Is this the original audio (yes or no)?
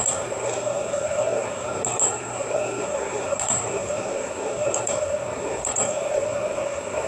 no